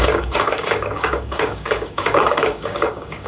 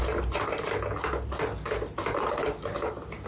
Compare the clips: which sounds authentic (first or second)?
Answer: second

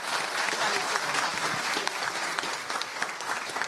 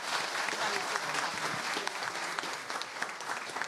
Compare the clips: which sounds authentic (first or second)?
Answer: second